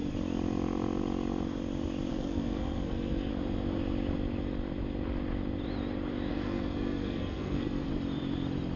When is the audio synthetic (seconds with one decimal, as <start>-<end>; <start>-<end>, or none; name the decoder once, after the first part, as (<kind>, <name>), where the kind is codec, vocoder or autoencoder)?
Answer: 2.1-3.3 (codec, SNAC); 6.3-7.9